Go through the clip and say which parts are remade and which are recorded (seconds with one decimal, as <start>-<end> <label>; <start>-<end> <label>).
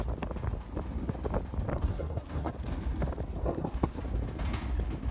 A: 0.0-1.7 recorded; 1.7-2.5 remade; 2.5-3.4 recorded; 3.4-4.0 remade; 4.0-5.1 recorded